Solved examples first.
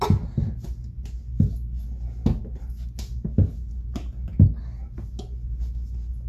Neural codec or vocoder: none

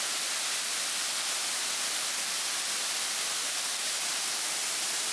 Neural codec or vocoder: vocoder, BigVGAN v2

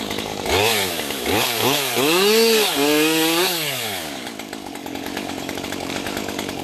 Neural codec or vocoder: codec, DAC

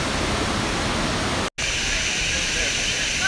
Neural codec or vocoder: none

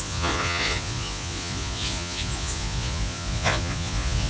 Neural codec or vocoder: vocoder, Vocos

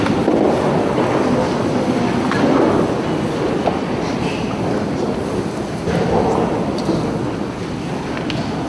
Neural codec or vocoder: none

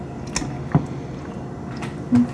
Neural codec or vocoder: none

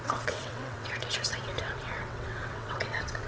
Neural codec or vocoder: vocoder, WaveNeXt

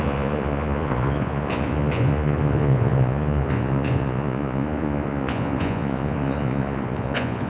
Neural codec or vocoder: vocoder, Vocos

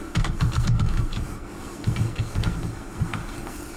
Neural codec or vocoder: codec, SNAC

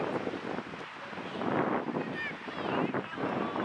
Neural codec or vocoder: none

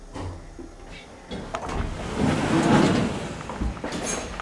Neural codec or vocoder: none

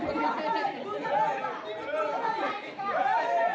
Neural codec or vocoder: none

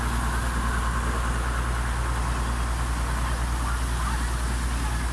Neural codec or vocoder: none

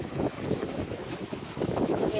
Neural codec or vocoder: autoencoder, DAC-VAE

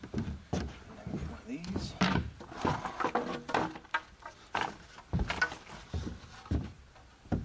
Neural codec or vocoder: none